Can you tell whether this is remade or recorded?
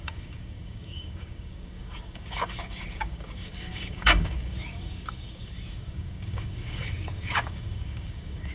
remade